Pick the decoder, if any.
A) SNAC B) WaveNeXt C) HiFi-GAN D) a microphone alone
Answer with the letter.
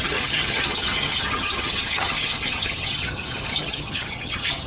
C